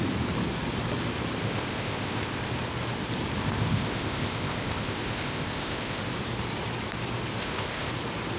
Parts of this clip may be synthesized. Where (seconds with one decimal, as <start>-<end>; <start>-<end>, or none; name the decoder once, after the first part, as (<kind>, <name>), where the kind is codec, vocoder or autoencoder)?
1.4-2.5 (codec, ZipCodec); 3.4-6.0; 7.4-7.9